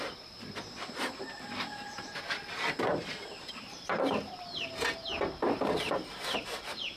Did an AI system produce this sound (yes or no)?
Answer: yes